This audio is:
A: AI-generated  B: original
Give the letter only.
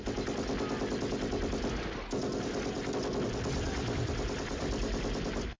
B